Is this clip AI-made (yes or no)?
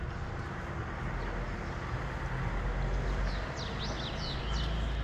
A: no